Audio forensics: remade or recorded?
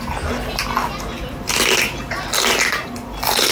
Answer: recorded